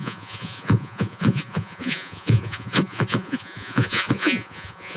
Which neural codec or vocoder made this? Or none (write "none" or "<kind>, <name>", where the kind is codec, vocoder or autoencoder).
vocoder, Vocos